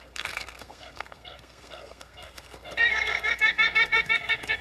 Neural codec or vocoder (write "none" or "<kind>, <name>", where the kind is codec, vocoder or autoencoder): codec, SNAC